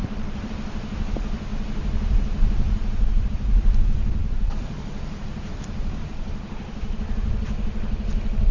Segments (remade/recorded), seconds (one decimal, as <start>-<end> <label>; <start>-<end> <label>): 0.0-0.5 remade; 0.5-4.2 recorded; 4.2-5.5 remade; 5.5-6.1 recorded; 6.1-7.0 remade; 7.0-8.5 recorded